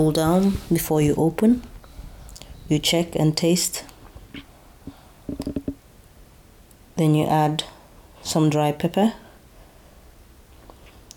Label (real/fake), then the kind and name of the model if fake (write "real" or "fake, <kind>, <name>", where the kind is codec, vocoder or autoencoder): real